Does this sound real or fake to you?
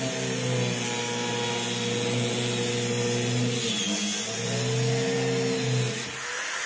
real